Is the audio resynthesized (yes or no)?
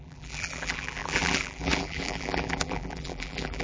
yes